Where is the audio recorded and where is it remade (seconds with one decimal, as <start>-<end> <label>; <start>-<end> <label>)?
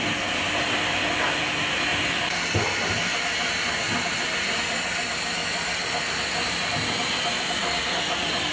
0.0-8.5 recorded